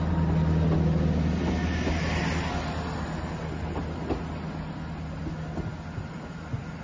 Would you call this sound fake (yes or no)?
no